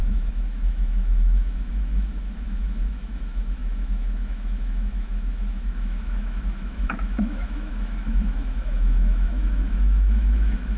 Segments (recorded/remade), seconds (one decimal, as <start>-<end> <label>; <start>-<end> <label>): 0.0-10.8 remade